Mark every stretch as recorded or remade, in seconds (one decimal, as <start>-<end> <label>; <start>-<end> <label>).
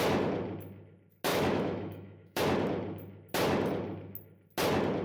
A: 0.0-1.3 recorded; 1.3-2.4 remade; 2.4-5.0 recorded